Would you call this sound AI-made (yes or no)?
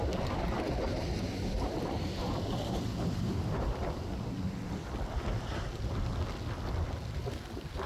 no